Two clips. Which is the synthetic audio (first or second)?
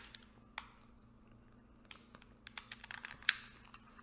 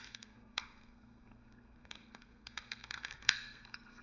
second